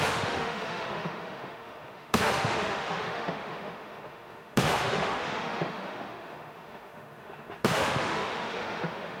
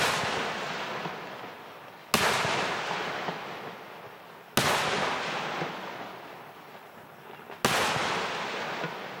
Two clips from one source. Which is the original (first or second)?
second